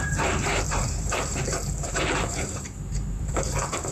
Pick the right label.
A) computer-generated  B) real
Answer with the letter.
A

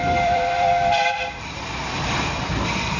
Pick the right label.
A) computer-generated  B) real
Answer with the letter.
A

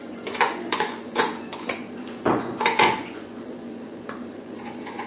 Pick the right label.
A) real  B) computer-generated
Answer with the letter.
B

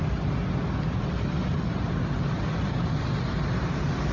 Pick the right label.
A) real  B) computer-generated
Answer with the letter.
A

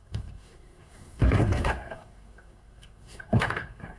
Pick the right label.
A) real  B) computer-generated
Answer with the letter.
B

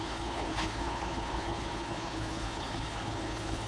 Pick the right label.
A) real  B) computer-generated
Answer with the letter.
B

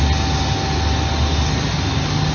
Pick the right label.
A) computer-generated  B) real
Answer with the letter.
B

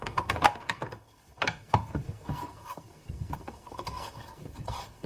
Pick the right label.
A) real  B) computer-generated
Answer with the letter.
B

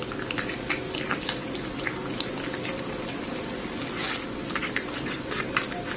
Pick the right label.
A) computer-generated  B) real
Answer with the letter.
B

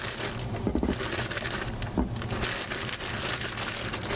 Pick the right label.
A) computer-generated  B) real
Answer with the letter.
B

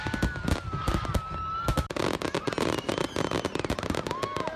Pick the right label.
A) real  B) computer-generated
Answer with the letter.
A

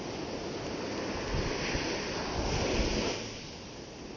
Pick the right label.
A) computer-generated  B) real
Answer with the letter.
B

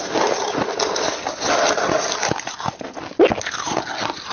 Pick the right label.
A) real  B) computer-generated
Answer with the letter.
A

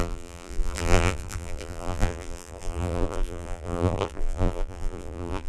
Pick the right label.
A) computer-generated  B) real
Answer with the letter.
A